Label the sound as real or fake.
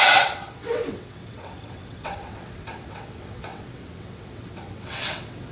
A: fake